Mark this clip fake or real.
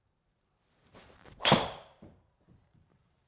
fake